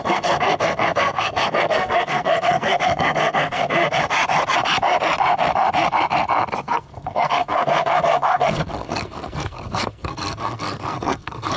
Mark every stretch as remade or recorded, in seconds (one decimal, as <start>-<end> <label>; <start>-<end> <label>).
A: 0.0-3.8 remade; 3.8-6.6 recorded; 6.6-11.6 remade